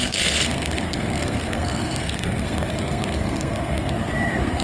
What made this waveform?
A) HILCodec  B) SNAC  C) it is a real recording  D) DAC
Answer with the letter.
B